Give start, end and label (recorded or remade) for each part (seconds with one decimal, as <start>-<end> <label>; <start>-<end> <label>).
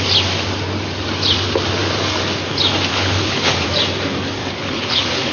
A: 0.0-2.9 recorded; 2.9-3.5 remade; 3.5-4.4 recorded; 4.4-5.3 remade